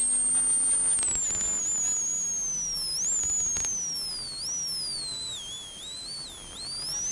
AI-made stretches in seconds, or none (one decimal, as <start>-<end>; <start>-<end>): none